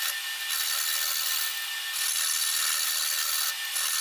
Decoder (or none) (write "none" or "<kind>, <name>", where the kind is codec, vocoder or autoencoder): none